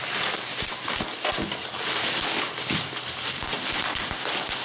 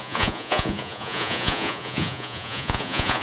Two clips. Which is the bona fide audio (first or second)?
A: first